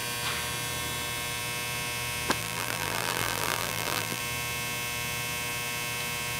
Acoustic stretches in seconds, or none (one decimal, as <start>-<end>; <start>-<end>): 0.0-2.4; 4.2-6.4